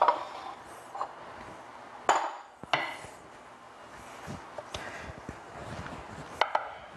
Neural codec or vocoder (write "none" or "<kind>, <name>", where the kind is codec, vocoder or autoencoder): none